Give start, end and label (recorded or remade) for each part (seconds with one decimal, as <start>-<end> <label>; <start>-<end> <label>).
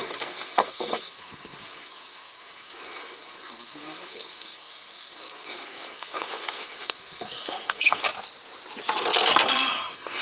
0.0-8.1 remade; 8.1-9.5 recorded; 9.5-10.2 remade